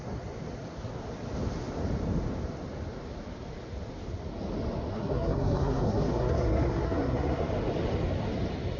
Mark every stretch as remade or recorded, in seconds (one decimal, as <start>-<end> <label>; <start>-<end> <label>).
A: 0.0-4.9 recorded; 4.9-7.5 remade; 7.5-8.8 recorded